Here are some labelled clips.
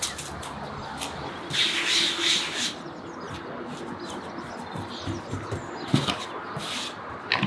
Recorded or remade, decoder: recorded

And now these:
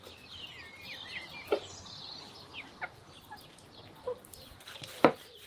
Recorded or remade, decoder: recorded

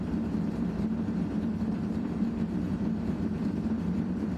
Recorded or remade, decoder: remade, vocoder, BigVGAN v2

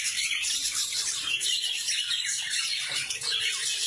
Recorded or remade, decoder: remade, vocoder, BigVGAN v2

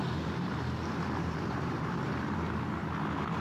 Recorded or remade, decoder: remade, vocoder, BigVGAN v2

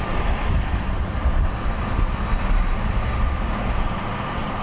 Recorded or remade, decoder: recorded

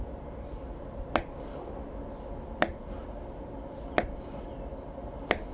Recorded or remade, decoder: recorded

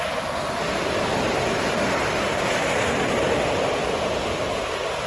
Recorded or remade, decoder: recorded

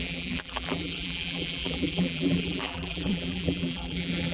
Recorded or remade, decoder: remade, vocoder, BigVGAN v2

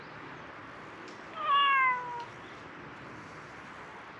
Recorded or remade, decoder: recorded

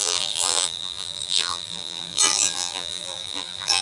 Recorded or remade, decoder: remade, vocoder, BigVGAN v2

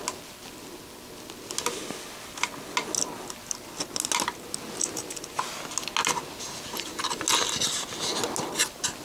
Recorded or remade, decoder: recorded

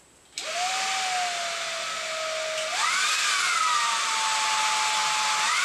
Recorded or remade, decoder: recorded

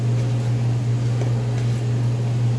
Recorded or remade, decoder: recorded